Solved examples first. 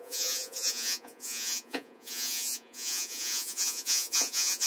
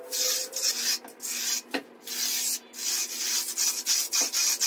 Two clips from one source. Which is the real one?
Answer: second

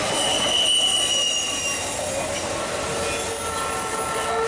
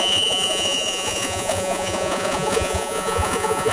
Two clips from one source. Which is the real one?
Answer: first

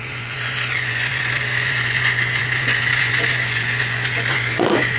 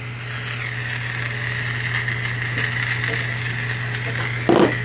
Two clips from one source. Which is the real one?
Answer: second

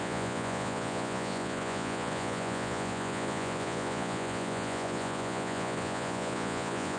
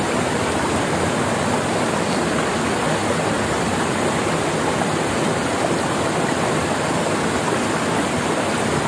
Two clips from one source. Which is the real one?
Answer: second